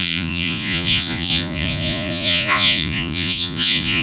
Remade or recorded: remade